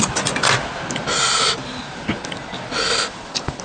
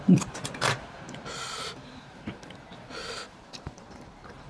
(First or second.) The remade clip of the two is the second